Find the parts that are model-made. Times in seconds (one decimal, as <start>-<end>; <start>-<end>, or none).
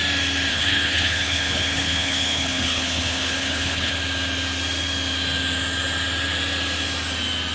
0.5-3.9